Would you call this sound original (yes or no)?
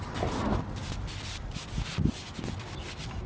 yes